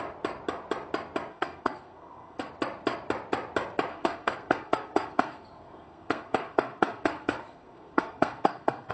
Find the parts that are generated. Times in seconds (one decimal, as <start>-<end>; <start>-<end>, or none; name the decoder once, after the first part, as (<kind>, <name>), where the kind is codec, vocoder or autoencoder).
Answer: 1.3-2.5 (codec, SNAC); 3.9-8.9